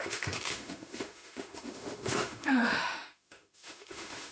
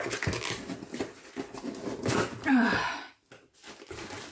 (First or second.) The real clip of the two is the second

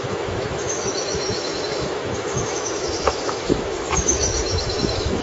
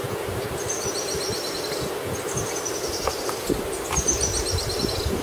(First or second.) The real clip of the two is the second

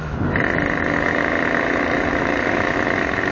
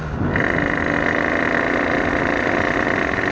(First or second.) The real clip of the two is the second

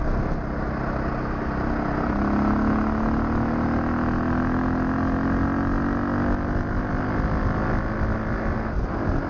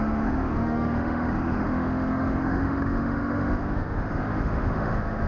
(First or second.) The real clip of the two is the first